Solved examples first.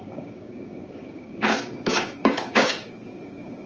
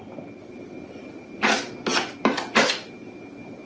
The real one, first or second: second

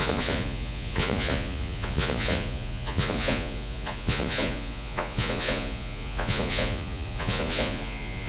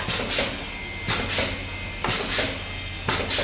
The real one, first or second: second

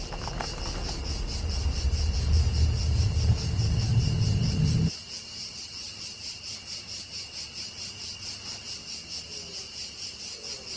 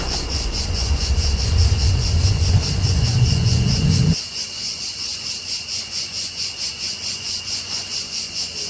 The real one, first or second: first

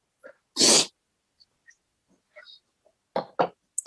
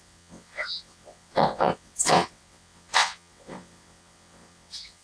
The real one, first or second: first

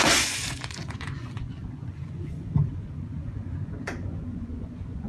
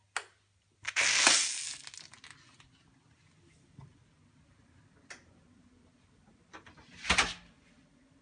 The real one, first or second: second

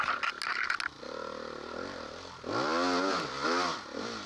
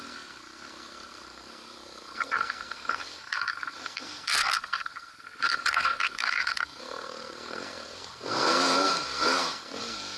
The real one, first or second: first